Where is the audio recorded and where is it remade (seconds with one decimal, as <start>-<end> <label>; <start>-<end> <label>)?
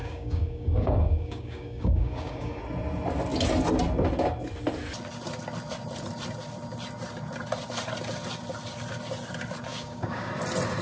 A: 0.0-2.6 remade; 2.6-9.7 recorded; 9.7-10.3 remade; 10.3-10.8 recorded